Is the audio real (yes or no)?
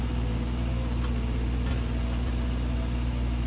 yes